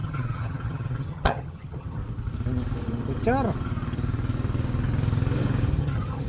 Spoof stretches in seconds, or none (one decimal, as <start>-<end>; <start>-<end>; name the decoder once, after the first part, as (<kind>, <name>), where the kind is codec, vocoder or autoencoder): 0.0-2.0 (vocoder, HiFi-GAN); 5.8-6.3